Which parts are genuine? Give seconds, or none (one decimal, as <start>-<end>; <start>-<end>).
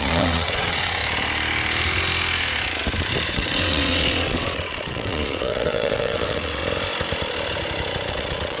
1.0-3.3; 6.6-8.1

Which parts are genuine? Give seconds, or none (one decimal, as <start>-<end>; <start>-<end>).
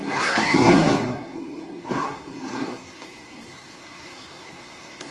none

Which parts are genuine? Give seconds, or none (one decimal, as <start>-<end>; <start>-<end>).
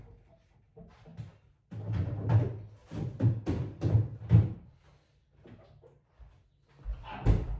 0.0-2.8; 4.8-6.9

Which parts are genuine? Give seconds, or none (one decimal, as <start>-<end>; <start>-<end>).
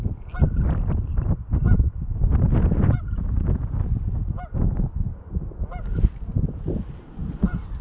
0.0-2.1; 5.1-7.8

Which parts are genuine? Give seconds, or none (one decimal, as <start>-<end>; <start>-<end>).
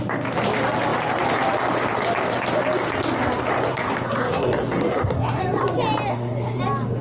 0.0-3.7; 5.4-6.1; 6.6-7.0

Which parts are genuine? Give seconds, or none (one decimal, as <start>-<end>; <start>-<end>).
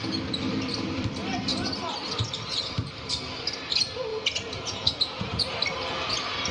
0.0-4.1; 5.5-6.5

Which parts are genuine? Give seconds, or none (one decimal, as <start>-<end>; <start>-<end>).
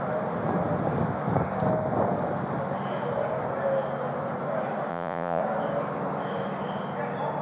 0.0-4.9; 5.4-7.4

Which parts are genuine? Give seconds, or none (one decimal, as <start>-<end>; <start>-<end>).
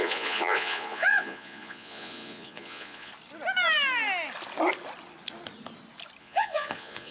3.1-6.2